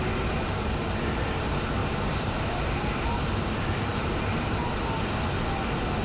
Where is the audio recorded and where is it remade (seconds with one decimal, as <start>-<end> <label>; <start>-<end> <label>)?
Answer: 0.0-1.8 recorded; 1.8-3.1 remade; 3.1-3.9 recorded; 3.9-4.7 remade; 4.7-6.0 recorded

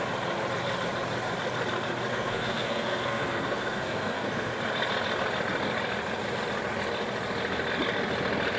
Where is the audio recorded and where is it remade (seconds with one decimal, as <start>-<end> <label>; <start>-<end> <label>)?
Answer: 0.0-2.1 recorded; 2.1-4.5 remade; 4.5-8.6 recorded

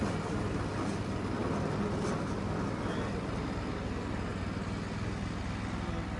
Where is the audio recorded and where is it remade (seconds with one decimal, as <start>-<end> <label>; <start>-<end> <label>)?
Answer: 0.0-6.2 recorded

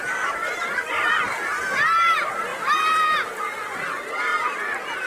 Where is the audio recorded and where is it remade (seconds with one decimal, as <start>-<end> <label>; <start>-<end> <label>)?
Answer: 0.0-4.3 remade; 4.3-5.1 recorded

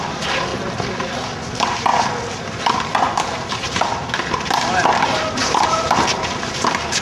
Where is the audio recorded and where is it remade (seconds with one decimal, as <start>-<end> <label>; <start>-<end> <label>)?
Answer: 0.0-0.5 remade; 0.5-1.0 recorded; 1.0-7.0 remade

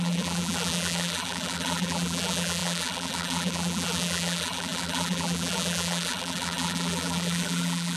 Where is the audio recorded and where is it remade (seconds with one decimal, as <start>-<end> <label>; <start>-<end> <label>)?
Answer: 0.0-8.0 remade